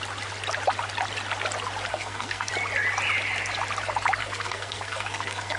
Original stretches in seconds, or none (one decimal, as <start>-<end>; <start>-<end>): 0.0-1.9; 2.5-4.2